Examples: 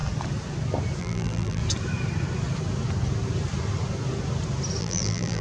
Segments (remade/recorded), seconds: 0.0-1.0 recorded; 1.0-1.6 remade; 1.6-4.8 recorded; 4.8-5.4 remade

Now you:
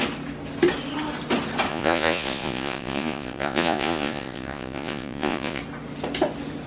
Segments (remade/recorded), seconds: 0.0-1.7 recorded; 1.7-5.6 remade; 5.6-6.7 recorded

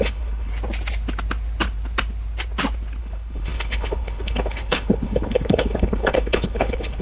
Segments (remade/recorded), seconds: 0.0-0.5 remade; 0.5-3.0 recorded; 3.0-7.0 remade